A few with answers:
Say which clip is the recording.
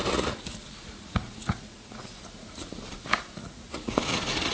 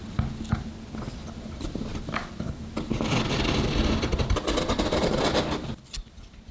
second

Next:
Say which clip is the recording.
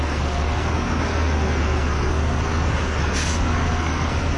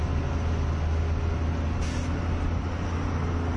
second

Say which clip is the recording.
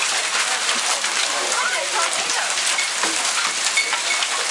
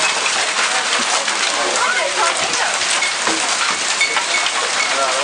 second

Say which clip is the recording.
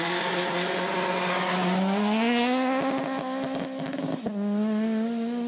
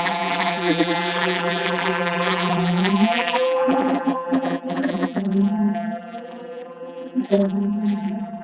first